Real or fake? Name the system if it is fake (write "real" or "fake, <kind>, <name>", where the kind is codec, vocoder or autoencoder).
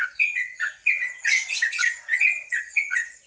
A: fake, vocoder, WaveNeXt